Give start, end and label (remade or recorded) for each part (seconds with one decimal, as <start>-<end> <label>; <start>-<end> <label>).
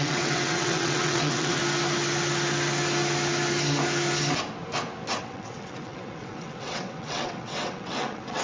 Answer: 0.0-1.6 remade; 1.6-5.2 recorded; 5.2-8.4 remade